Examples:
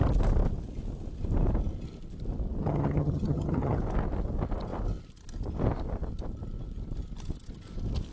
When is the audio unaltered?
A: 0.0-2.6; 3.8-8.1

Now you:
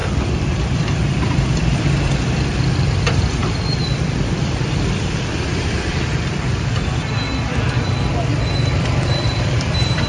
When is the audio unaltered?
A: none